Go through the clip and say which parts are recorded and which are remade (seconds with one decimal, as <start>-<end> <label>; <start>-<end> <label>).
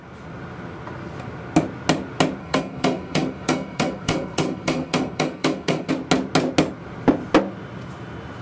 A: 0.0-2.4 recorded; 2.4-5.9 remade; 5.9-8.4 recorded